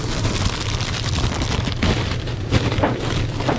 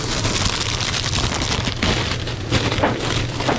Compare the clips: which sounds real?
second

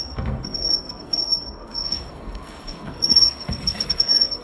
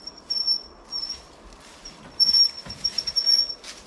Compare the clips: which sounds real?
second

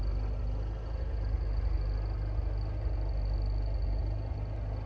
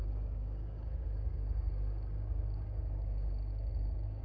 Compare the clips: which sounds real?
first